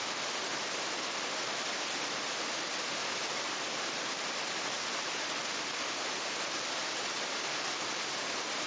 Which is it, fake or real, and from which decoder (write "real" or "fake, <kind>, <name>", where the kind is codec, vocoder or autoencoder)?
real